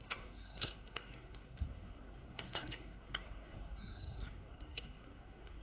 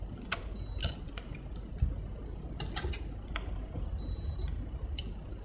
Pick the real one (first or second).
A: second